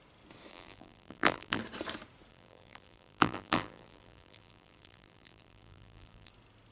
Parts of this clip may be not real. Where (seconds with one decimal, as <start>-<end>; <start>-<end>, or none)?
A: 0.5-1.6; 2.3-6.3